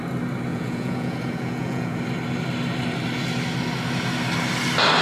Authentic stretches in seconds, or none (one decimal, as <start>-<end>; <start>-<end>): 0.0-0.5; 2.0-5.0